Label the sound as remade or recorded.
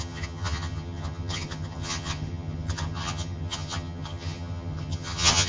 remade